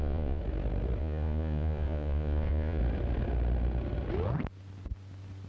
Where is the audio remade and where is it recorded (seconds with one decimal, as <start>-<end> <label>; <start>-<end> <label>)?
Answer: 0.0-0.4 remade; 0.4-1.0 recorded; 1.0-2.8 remade; 2.8-5.5 recorded